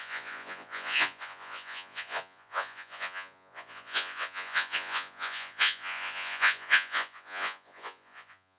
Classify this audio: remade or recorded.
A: remade